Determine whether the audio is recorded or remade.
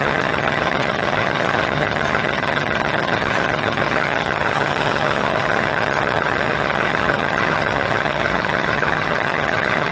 remade